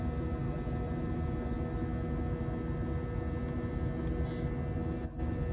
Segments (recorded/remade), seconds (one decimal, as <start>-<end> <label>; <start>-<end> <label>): 0.0-5.5 recorded